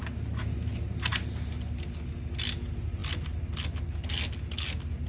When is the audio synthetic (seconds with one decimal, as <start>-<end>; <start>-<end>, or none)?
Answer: none